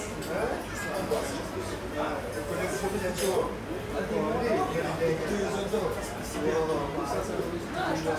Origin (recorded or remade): recorded